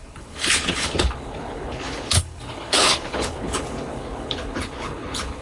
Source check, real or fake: fake